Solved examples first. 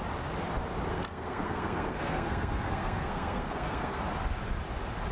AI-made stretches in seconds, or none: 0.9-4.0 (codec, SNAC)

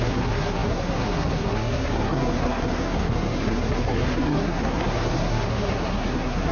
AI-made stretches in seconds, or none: 0.0-6.5 (codec, SNAC)

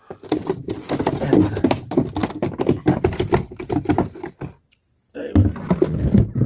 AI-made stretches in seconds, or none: none

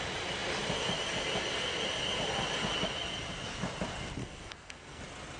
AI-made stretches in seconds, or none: 4.2-5.0 (codec, SNAC)

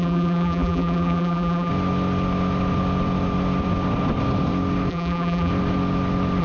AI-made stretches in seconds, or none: 0.0-1.7 (vocoder, BigVGAN v2); 4.9-5.5

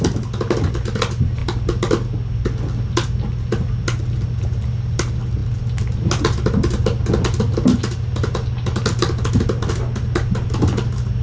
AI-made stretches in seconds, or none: none

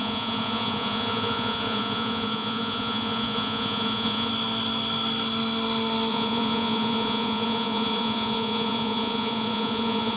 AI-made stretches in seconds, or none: 0.0-4.3 (vocoder, Vocos); 6.1-10.2